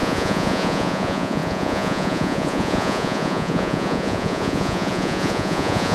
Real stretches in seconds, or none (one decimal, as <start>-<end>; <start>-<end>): none